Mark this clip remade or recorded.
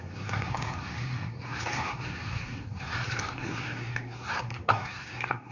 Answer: remade